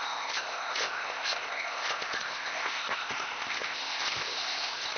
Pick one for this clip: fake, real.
fake